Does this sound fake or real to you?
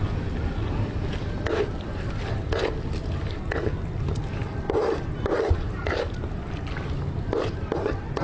real